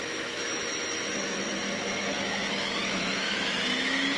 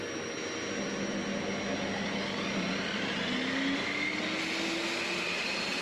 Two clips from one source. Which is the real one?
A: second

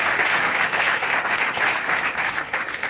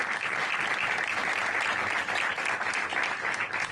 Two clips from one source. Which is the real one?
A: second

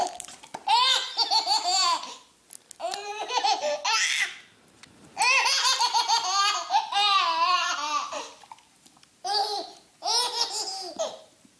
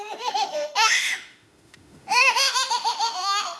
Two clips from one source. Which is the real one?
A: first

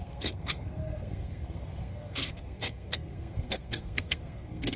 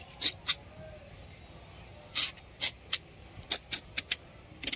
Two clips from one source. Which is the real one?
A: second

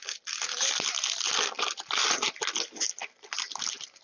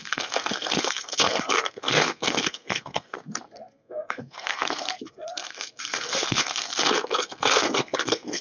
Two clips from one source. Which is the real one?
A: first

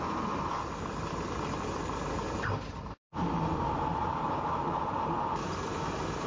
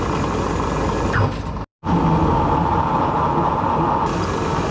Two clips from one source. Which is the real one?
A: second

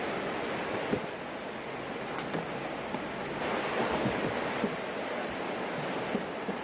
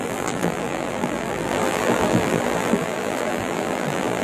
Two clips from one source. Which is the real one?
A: first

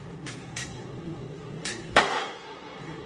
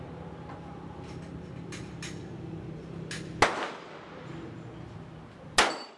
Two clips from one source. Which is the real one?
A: second